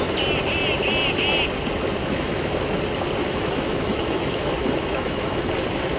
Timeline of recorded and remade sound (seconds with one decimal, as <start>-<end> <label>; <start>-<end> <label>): 0.0-2.0 recorded; 2.0-2.8 remade; 2.8-3.2 recorded; 3.2-5.5 remade; 5.5-6.0 recorded